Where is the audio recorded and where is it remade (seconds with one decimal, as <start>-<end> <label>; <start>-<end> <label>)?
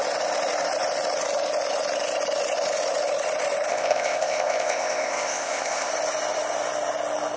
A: 0.0-3.7 recorded; 3.7-5.9 remade; 5.9-7.4 recorded